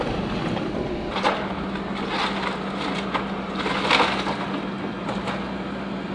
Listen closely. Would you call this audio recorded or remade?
recorded